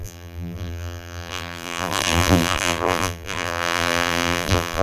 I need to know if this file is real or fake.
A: fake